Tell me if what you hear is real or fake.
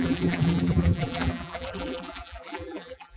fake